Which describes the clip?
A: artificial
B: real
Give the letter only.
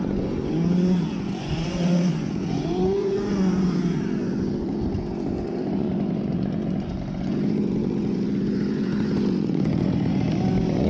A